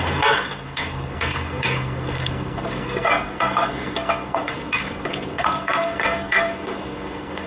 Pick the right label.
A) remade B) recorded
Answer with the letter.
A